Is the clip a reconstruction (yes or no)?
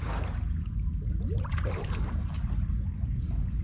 yes